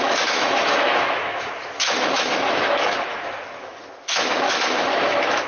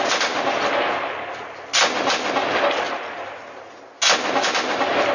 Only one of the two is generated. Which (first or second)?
first